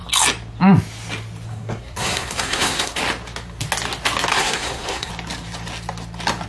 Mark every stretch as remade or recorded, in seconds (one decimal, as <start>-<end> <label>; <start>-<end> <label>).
0.0-1.5 recorded; 1.5-3.0 remade; 3.0-4.3 recorded; 4.3-5.1 remade; 5.1-6.5 recorded